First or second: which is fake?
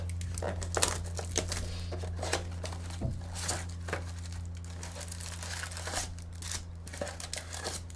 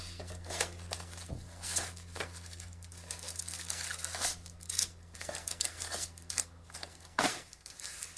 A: second